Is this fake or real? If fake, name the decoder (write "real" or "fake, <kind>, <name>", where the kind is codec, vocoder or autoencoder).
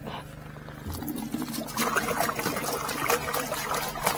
real